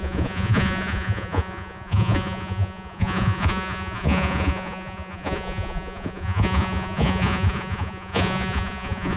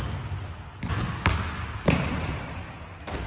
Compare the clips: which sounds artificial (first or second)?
first